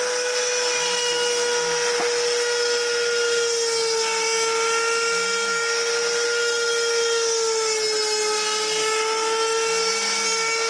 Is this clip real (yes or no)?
yes